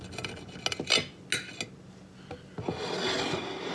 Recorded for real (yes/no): yes